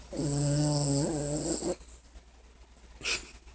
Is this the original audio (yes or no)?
yes